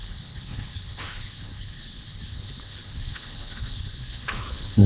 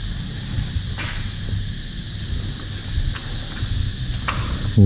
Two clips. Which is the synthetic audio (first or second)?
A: first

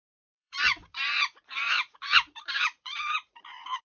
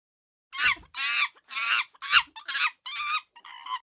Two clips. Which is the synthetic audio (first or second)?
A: first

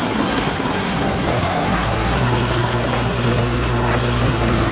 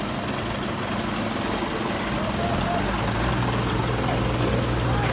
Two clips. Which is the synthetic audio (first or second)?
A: first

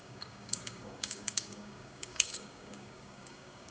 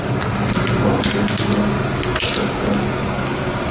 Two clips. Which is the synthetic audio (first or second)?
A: first